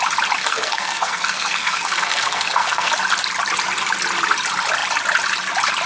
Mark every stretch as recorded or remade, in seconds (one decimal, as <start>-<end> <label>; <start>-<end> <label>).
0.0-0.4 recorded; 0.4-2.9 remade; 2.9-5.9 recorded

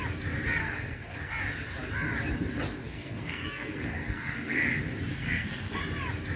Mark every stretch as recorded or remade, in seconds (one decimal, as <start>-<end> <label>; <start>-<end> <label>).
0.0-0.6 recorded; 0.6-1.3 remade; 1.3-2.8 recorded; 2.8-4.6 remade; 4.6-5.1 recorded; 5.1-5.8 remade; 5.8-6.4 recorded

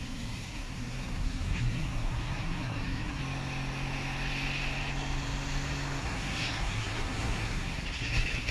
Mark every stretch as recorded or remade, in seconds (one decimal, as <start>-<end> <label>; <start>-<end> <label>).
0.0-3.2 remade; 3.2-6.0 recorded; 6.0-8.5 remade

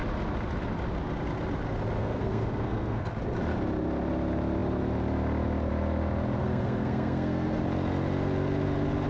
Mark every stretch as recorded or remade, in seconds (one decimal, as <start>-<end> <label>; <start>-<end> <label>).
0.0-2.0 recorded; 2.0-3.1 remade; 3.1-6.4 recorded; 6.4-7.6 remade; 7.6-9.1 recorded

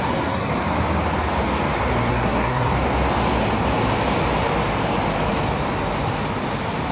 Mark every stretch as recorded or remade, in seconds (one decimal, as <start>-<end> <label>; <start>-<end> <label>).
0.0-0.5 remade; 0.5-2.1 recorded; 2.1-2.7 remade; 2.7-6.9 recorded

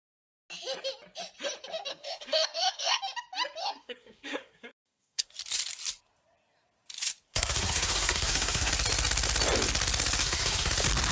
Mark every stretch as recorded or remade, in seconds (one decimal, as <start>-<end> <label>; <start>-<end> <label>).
0.0-1.9 recorded; 1.9-3.0 remade; 3.0-3.6 recorded; 3.6-5.3 remade; 5.3-7.3 recorded; 7.3-8.7 remade; 8.7-10.2 recorded; 10.2-10.7 remade; 10.7-11.1 recorded

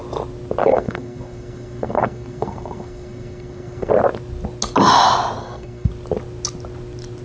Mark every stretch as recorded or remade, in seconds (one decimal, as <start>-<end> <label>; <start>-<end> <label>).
0.0-0.6 recorded; 0.6-3.9 remade; 3.9-5.4 recorded; 5.4-5.9 remade; 5.9-7.2 recorded